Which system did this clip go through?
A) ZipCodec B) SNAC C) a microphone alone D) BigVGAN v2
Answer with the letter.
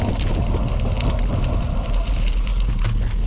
C